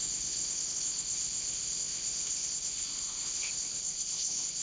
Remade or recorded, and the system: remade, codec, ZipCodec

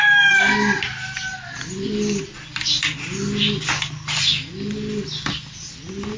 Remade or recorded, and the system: recorded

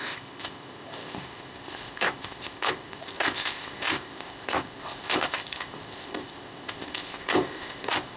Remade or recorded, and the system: remade, codec, ZipCodec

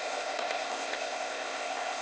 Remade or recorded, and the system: remade, codec, ZipCodec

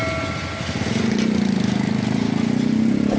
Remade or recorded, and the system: recorded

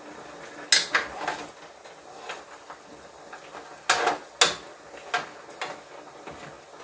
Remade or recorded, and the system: recorded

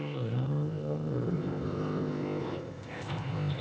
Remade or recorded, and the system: remade, codec, ZipCodec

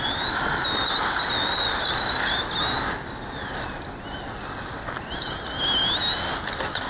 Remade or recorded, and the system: recorded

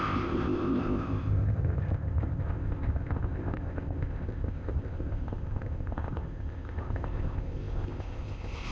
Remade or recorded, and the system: remade, codec, ZipCodec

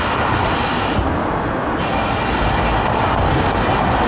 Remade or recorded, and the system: recorded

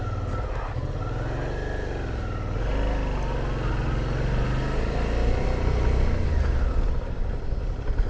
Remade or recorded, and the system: recorded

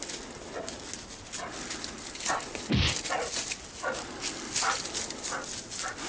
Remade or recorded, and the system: recorded